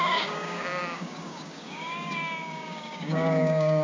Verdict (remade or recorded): remade